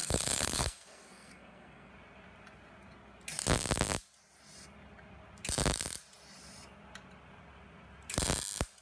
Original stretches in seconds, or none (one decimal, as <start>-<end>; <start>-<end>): 1.9-8.8